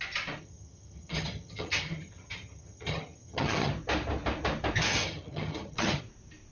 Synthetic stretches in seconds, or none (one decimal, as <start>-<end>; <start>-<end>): 0.4-3.7; 4.9-6.0